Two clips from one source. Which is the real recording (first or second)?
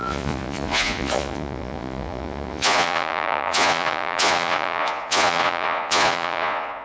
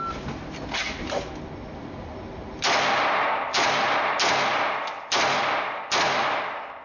second